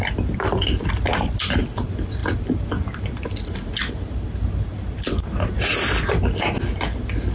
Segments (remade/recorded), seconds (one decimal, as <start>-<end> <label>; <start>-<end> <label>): 0.0-7.3 recorded